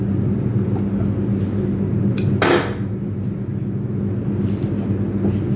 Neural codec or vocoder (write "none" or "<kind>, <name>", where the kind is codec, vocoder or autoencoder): none